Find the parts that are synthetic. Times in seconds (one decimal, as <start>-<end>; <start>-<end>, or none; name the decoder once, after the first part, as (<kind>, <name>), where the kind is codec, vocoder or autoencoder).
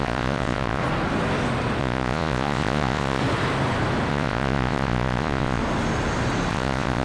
0.0-0.8 (vocoder, Vocos); 1.8-3.2; 4.1-5.6; 6.5-7.0